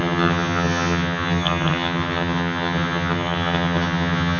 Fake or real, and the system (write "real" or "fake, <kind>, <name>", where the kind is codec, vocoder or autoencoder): fake, vocoder, HiFi-GAN